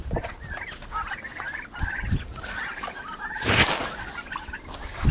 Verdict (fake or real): real